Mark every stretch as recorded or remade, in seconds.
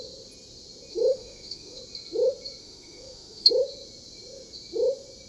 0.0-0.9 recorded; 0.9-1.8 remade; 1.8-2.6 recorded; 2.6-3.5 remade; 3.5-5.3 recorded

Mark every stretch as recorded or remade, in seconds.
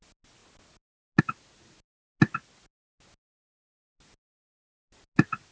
0.0-5.5 recorded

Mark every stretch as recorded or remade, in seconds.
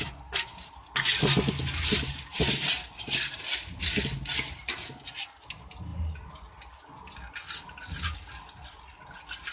0.0-9.5 recorded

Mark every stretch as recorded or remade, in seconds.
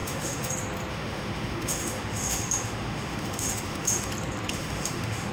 0.0-0.5 remade; 0.5-0.9 recorded; 0.9-4.1 remade; 4.1-4.5 recorded; 4.5-5.3 remade